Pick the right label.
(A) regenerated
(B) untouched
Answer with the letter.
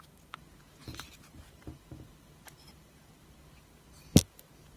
A